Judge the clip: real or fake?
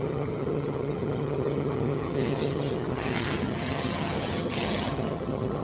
fake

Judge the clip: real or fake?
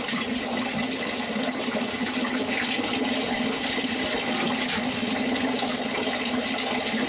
real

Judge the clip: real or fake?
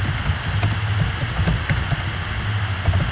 real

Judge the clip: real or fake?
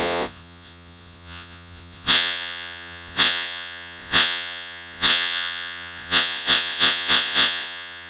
fake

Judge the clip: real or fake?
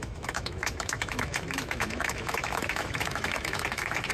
fake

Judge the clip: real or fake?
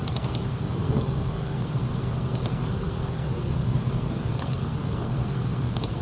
fake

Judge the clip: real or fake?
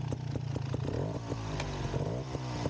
real